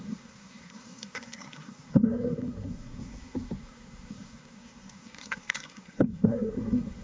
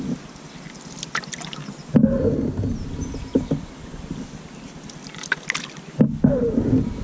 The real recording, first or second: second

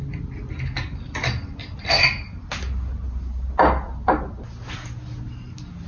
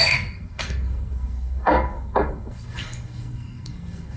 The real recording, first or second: first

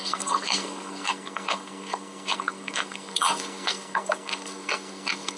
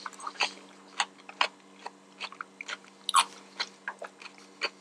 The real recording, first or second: second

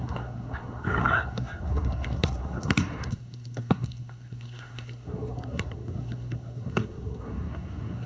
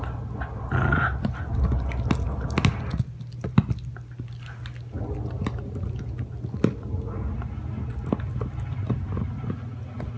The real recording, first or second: second